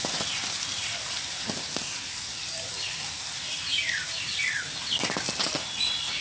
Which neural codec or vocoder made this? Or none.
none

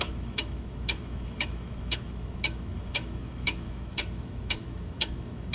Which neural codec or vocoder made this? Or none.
autoencoder, DAC-VAE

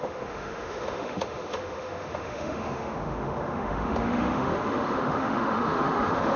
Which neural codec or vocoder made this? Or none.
autoencoder, DAC-VAE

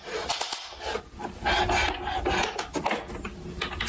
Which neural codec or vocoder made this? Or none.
none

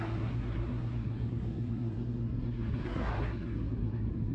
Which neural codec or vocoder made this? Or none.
codec, SNAC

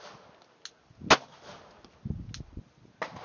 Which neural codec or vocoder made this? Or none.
none